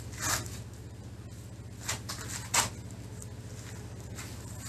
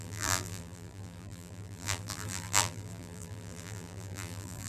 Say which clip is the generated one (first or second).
second